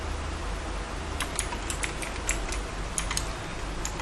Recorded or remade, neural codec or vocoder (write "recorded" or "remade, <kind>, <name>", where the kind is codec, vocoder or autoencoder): recorded